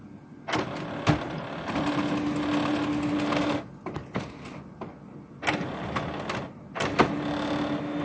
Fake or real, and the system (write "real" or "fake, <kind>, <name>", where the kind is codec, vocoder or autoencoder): real